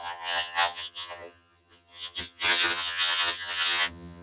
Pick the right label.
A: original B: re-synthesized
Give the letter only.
B